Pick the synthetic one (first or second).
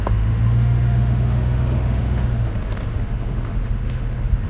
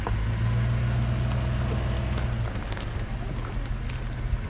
first